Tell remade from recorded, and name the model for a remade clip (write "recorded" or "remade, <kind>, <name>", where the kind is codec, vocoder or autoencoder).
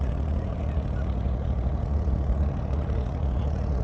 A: remade, vocoder, Vocos